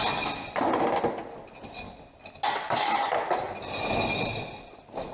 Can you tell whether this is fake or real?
real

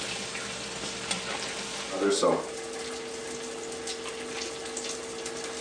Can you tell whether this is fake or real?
real